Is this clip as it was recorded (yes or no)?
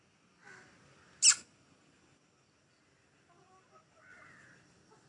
yes